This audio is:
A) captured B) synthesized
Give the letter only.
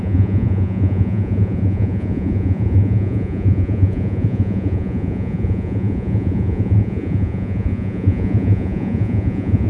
B